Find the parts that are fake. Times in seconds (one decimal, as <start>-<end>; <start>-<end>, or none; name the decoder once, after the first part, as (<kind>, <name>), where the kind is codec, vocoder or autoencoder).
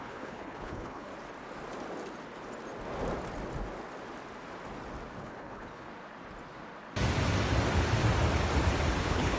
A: 0.0-1.1 (codec, HILCodec); 5.2-5.9; 9.0-9.4